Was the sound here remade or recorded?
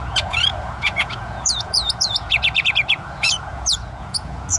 remade